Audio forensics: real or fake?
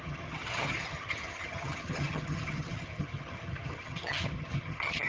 fake